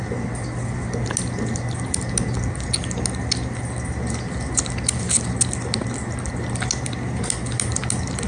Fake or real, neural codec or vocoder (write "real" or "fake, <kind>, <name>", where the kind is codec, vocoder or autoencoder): real